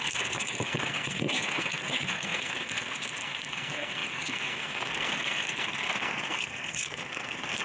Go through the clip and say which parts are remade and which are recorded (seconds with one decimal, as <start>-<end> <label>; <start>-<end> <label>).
0.0-7.6 remade